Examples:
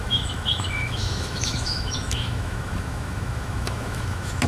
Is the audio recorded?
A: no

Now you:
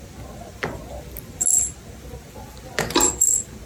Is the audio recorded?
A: yes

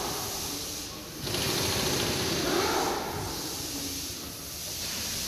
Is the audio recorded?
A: yes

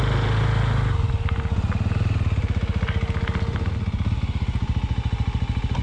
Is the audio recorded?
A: yes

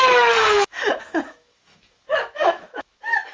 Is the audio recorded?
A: no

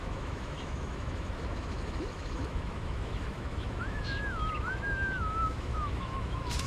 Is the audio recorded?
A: no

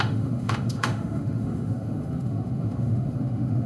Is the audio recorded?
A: no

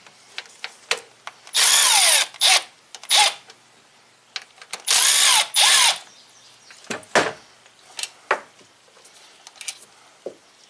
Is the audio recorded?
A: yes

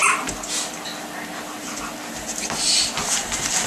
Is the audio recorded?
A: yes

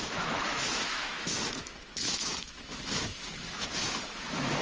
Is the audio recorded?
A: no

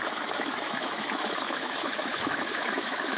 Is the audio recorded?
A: no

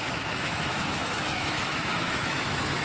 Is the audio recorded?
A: no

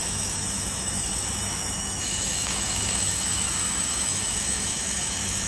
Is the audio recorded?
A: no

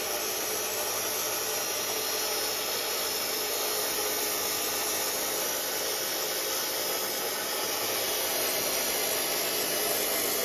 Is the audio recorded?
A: yes